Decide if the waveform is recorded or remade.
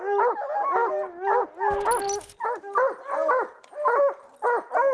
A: recorded